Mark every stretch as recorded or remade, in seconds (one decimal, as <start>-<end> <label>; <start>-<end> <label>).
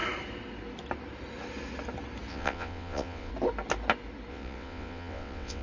0.0-2.3 recorded; 2.3-3.3 remade; 3.3-4.3 recorded; 4.3-5.6 remade